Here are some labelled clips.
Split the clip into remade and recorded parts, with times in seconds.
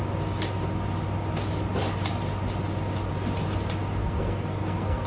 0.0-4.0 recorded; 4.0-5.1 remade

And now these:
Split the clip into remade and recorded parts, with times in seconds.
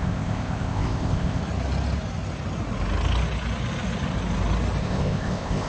0.0-1.4 remade; 1.4-4.8 recorded; 4.8-5.7 remade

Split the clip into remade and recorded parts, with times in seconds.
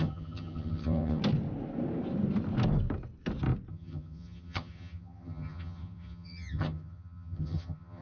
0.0-1.2 remade; 1.2-3.7 recorded; 3.7-8.0 remade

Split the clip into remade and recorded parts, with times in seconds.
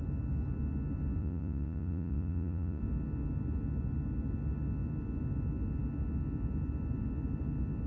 0.0-1.2 recorded; 1.2-2.8 remade; 2.8-7.9 recorded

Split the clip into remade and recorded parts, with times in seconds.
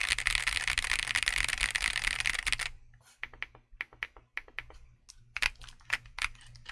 0.0-6.7 recorded